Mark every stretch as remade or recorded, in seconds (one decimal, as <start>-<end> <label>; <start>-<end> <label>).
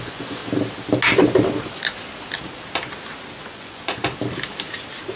0.0-0.4 remade; 0.4-3.5 recorded; 3.5-4.0 remade; 4.0-5.2 recorded